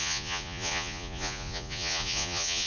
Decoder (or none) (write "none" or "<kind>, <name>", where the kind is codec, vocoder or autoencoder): vocoder, Vocos